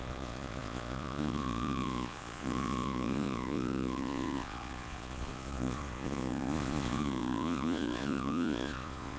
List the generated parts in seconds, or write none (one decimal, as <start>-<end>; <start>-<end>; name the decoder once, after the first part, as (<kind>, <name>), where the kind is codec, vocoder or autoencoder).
0.0-9.2 (vocoder, Vocos)